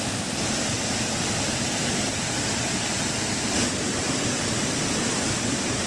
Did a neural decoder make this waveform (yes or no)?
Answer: no